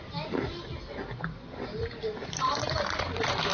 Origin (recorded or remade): remade